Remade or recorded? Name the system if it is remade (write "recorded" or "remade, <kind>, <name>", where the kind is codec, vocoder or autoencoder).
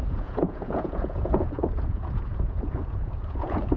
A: remade, vocoder, Vocos